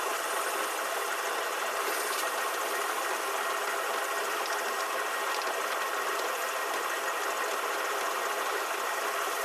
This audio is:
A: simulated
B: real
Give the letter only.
B